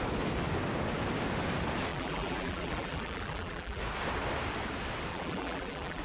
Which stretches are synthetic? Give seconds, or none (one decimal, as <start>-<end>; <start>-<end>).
1.9-3.8; 5.1-6.0